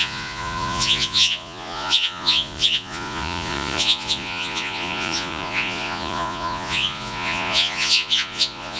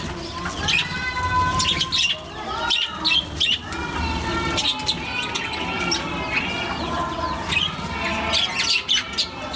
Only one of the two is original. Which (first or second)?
second